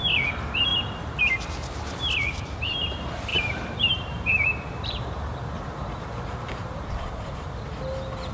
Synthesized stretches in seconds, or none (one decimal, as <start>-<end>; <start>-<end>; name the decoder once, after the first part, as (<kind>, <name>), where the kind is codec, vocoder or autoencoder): 0.7-1.2 (vocoder, BigVGAN v2); 3.3-7.5